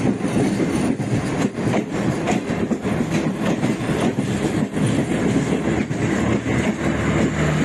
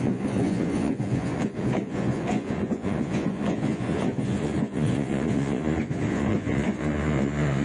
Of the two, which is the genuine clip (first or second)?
first